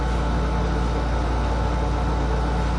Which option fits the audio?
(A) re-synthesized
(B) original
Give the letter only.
B